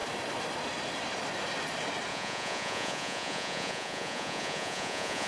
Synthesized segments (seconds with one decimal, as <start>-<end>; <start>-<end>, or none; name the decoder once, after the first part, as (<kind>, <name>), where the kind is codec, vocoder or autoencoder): 2.1-5.3 (vocoder, Vocos)